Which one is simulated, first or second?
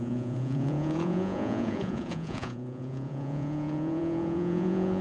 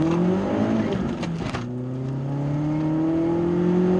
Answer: first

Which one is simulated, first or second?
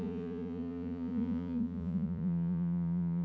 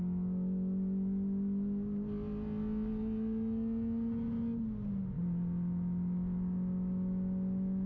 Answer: first